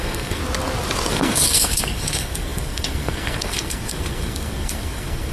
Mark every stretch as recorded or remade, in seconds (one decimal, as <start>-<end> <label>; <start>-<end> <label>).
0.0-0.4 remade; 0.4-1.1 recorded; 1.1-5.3 remade